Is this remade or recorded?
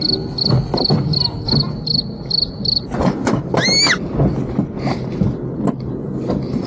recorded